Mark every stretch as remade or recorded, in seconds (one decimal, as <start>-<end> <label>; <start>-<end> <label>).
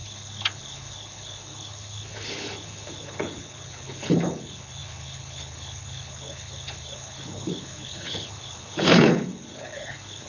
0.0-10.3 remade